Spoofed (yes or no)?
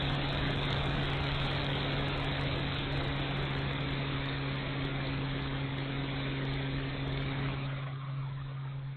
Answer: yes